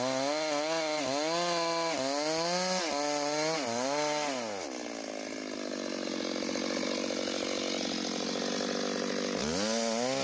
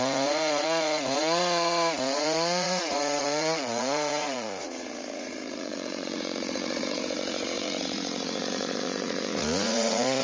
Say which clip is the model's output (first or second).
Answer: second